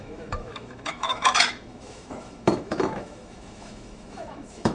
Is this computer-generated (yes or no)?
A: yes